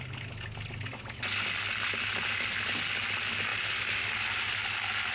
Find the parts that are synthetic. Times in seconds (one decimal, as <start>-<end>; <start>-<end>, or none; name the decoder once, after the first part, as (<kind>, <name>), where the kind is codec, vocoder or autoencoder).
none